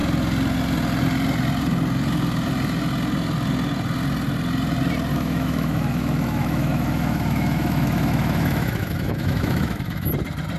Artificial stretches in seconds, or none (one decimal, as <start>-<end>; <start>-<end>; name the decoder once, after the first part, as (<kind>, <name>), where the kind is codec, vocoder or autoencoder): 5.1-10.1 (autoencoder, DAC-VAE)